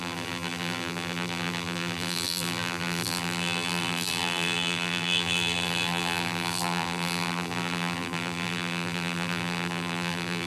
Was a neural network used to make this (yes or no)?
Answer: yes